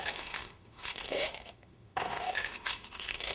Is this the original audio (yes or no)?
no